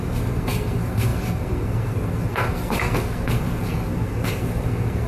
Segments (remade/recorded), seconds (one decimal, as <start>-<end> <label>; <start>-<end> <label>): 0.0-5.1 remade